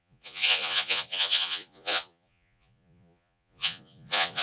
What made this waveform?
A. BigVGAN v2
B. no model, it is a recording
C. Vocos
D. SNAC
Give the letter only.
C